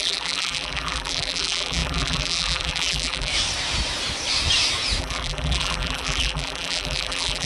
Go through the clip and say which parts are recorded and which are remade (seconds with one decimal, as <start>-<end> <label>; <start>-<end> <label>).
0.0-3.3 remade; 3.3-5.0 recorded; 5.0-7.5 remade

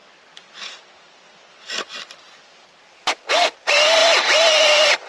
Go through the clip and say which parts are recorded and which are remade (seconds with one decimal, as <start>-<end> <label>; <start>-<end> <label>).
0.0-5.1 recorded

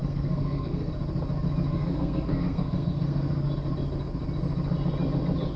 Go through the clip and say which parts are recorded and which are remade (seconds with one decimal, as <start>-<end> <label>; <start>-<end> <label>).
0.0-0.9 remade; 0.9-1.7 recorded; 1.7-3.5 remade; 3.5-5.6 recorded

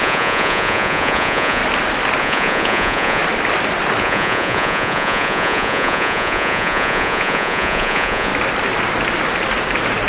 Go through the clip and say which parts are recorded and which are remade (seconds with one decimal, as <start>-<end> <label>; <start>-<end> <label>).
0.0-1.6 remade; 1.6-2.2 recorded; 2.2-3.2 remade; 3.2-4.0 recorded; 4.0-8.3 remade; 8.3-10.1 recorded

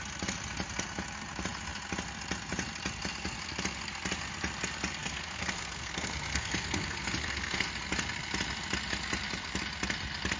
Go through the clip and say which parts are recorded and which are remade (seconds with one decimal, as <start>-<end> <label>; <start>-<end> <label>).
0.0-5.0 recorded; 5.0-7.7 remade; 7.7-10.4 recorded